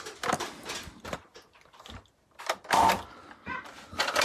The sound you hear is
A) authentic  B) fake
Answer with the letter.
A